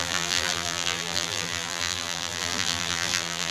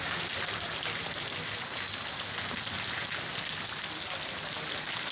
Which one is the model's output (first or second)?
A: first